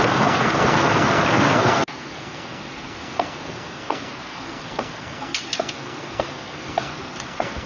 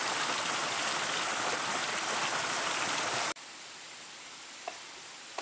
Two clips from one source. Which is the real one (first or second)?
second